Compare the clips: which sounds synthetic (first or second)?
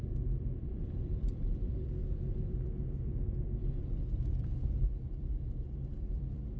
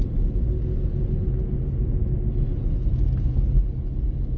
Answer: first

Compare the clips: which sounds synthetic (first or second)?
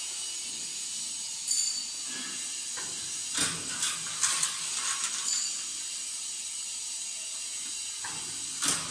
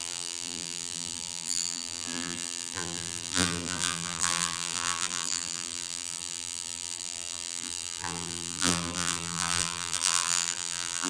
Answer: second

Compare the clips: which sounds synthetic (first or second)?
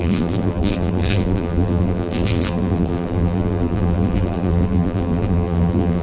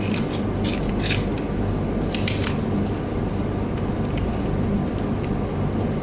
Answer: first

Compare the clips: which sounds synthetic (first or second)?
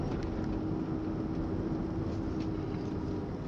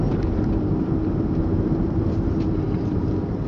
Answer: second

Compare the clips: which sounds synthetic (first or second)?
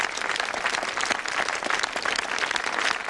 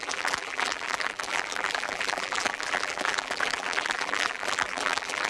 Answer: second